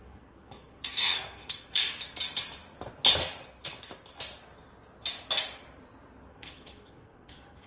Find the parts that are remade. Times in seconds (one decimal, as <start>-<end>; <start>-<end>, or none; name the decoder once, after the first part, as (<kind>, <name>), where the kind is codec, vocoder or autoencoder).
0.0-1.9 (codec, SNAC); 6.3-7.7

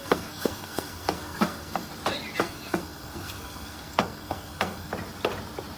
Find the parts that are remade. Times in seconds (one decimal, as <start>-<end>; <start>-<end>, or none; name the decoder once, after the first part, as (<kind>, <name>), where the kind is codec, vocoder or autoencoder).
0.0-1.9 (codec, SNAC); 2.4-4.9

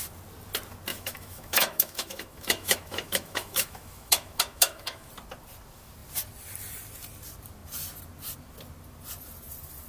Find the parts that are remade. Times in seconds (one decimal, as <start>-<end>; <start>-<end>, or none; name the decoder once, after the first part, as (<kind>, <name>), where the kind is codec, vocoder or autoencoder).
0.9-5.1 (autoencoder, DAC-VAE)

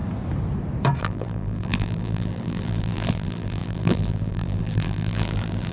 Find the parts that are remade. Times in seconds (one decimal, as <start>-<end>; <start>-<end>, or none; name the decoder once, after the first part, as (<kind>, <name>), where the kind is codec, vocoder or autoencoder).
1.0-5.7 (vocoder, BigVGAN v2)